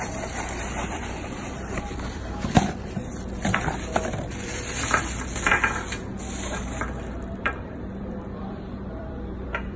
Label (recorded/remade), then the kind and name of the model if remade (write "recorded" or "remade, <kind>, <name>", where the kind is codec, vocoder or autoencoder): remade, vocoder, BigVGAN v2